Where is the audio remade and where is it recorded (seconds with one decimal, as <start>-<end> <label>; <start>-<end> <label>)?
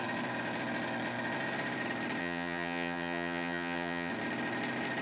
0.0-2.2 recorded; 2.2-4.1 remade; 4.1-5.0 recorded